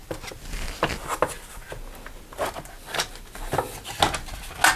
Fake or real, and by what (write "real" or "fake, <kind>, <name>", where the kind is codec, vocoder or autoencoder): real